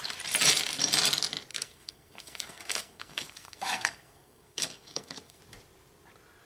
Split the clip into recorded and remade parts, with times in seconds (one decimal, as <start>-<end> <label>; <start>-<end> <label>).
0.0-1.5 recorded; 1.5-5.4 remade; 5.4-6.5 recorded